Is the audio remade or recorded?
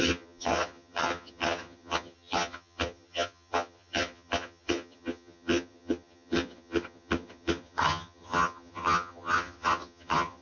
remade